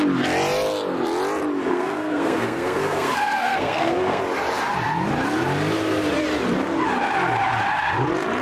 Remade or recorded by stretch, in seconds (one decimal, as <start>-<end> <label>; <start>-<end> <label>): 0.0-1.7 recorded; 1.7-4.2 remade; 4.2-8.4 recorded